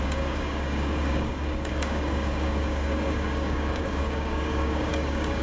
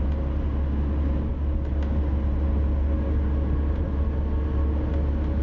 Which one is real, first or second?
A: second